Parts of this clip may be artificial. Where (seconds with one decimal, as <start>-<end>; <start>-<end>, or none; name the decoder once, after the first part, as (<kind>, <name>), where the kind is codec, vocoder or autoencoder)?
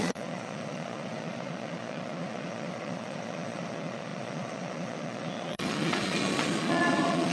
0.0-7.3 (vocoder, Vocos)